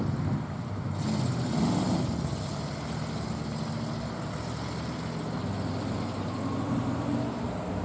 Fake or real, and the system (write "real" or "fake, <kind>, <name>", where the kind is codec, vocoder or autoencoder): real